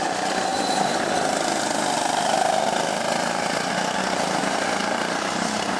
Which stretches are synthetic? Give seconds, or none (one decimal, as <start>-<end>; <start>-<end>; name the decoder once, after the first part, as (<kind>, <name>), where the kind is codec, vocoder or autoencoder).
none